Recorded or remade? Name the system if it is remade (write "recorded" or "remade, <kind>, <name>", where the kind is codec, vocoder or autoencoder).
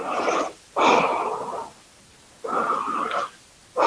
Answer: recorded